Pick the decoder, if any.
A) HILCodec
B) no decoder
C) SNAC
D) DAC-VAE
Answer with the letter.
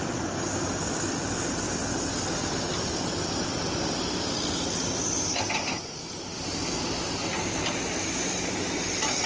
B